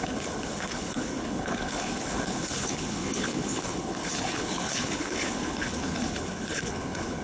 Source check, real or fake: fake